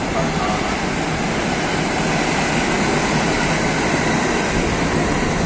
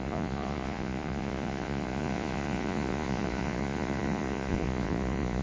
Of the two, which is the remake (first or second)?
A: second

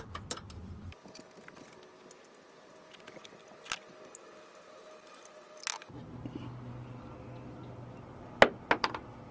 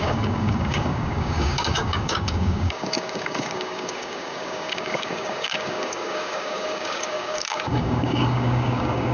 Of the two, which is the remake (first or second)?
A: second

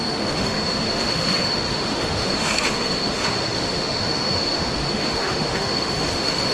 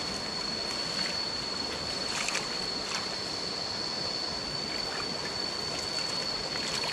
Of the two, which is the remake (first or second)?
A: first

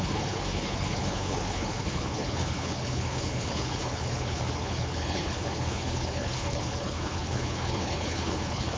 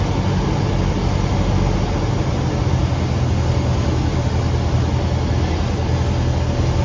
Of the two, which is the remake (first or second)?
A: first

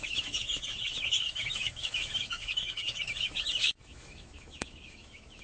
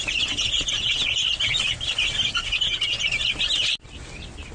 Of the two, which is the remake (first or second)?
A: first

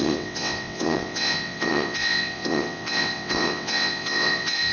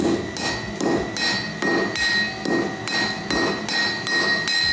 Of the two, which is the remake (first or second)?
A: first